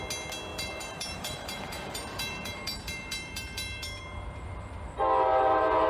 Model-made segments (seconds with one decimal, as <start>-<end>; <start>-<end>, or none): 0.5-4.0